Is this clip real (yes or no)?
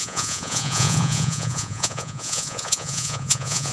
no